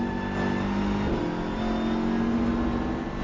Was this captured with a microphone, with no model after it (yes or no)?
yes